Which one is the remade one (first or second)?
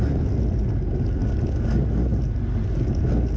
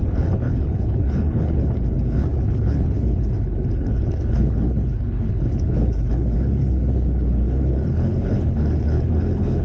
second